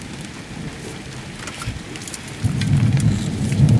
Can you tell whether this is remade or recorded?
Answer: recorded